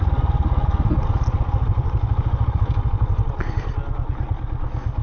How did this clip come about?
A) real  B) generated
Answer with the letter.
A